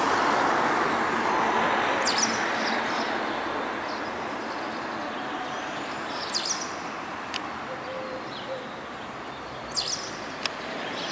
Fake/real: real